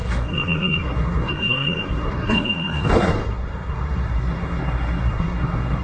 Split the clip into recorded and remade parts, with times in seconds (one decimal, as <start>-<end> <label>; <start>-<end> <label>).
0.0-5.8 remade